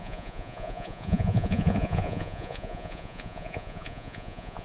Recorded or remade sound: remade